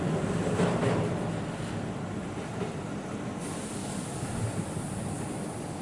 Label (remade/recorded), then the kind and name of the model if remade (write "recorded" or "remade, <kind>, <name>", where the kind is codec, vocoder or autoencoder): recorded